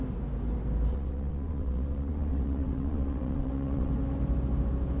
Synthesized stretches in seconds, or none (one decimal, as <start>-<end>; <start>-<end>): 0.9-3.9